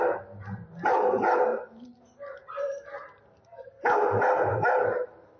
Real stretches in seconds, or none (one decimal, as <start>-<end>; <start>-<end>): 0.0-1.5; 2.0-2.4; 3.0-4.5